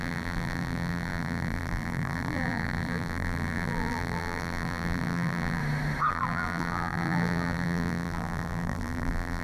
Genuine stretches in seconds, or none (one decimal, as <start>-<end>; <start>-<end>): 5.6-6.1